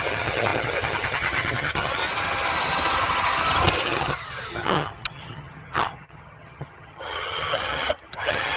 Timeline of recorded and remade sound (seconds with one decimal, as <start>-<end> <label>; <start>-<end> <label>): 0.0-2.0 remade; 2.0-3.8 recorded; 3.8-8.6 remade